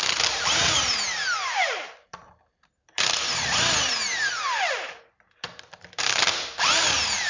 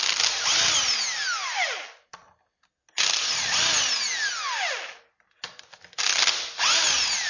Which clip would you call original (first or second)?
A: second